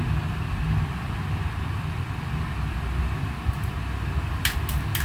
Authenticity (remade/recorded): recorded